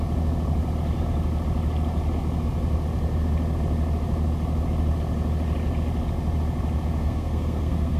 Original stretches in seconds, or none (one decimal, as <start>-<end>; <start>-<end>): 0.0-7.0